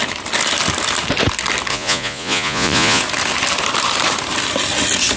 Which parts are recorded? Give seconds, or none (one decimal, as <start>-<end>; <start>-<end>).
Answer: 0.0-1.7; 3.0-5.2